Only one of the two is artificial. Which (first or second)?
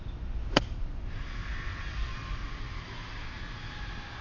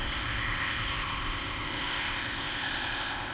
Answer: second